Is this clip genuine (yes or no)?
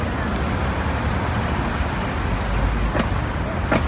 yes